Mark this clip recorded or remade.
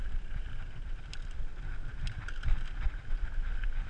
recorded